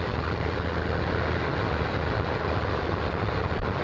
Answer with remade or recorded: recorded